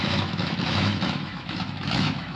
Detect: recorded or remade remade